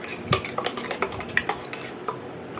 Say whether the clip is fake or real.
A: real